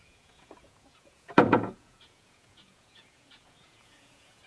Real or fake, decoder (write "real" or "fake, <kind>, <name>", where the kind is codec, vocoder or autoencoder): fake, vocoder, Vocos